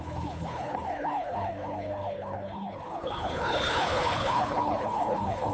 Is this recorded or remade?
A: remade